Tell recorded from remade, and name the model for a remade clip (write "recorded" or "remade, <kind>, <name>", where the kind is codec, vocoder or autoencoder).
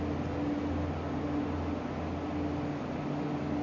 recorded